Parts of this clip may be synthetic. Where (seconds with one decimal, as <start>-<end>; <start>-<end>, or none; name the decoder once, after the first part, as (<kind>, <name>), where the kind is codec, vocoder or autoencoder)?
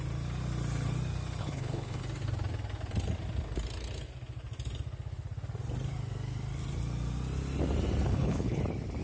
1.4-2.0 (codec, HILCodec); 8.1-8.6